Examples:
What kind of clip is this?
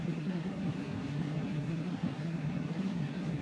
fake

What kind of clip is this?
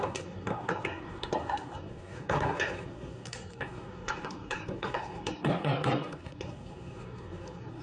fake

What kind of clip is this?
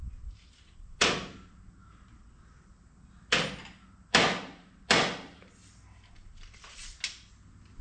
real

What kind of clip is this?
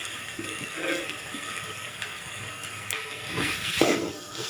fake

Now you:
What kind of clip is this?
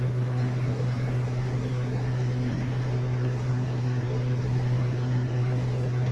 fake